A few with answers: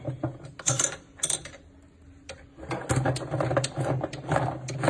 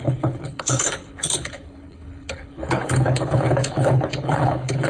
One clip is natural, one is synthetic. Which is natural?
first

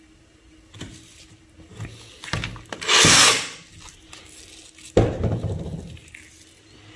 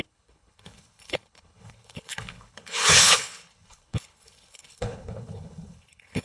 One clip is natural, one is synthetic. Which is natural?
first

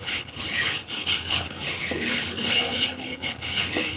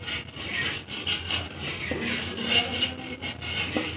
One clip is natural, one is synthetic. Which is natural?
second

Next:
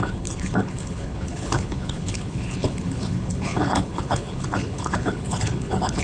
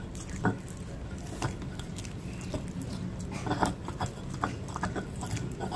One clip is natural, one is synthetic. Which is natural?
second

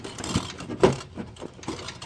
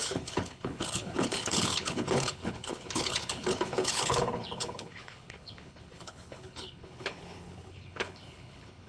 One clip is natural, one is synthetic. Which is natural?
first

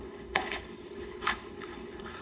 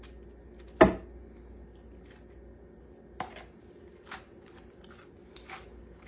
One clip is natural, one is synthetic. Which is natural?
second